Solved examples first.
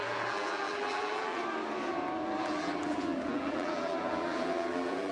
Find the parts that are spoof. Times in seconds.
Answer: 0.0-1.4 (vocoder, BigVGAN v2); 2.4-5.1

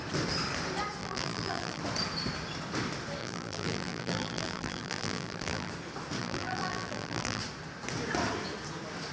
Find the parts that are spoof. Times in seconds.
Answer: 1.0-1.8 (vocoder, BigVGAN v2); 3.2-5.7; 6.2-7.4

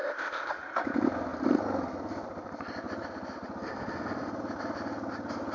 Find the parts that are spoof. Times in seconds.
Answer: 0.0-0.5 (codec, ZipCodec)